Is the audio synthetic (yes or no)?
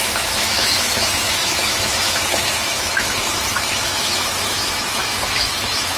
yes